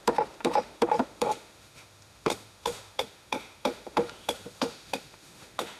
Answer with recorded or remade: remade